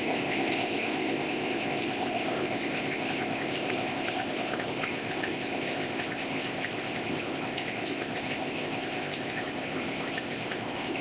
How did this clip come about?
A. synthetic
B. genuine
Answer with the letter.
A